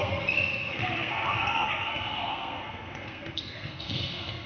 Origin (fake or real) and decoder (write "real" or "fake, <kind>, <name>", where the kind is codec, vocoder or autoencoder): fake, codec, SNAC